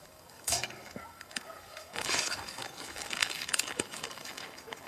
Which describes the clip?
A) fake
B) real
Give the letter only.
A